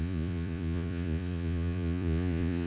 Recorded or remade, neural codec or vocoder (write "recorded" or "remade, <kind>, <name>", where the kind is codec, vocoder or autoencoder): remade, vocoder, Vocos